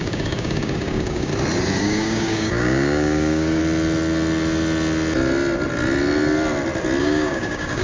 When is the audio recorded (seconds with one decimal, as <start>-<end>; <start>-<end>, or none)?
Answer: 1.3-1.8; 3.6-7.0